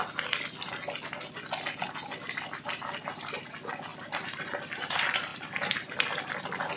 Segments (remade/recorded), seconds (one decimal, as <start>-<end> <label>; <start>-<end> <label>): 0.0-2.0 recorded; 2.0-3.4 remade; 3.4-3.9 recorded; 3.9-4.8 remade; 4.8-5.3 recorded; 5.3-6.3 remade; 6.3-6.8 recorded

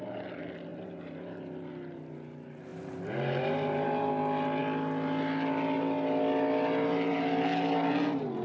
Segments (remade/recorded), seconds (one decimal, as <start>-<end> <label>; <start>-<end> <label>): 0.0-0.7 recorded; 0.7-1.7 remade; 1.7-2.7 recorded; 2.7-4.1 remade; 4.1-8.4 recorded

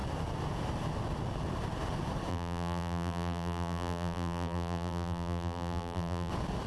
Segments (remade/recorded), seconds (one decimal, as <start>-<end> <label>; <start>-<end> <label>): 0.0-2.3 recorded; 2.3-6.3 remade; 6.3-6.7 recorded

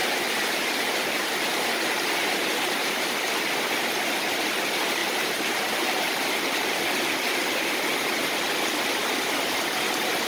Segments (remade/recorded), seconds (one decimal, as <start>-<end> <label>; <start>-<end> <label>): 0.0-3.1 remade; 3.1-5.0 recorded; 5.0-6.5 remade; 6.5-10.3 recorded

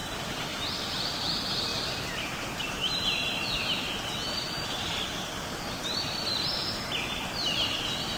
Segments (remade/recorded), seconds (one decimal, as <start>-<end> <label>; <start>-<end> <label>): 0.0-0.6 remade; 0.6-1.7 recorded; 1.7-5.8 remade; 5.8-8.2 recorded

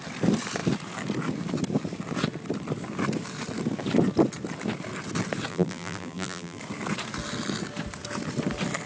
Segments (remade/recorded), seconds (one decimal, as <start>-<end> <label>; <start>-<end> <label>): 0.0-5.5 recorded; 5.5-6.6 remade; 6.6-8.9 recorded

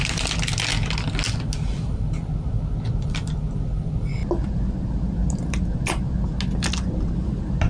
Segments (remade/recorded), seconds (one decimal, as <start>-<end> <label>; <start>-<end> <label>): 0.0-7.7 recorded

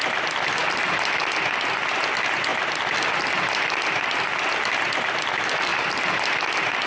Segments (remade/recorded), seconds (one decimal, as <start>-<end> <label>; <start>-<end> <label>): 0.0-0.6 recorded; 0.6-1.2 remade; 1.2-6.9 recorded